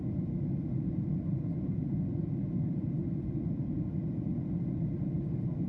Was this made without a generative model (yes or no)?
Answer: yes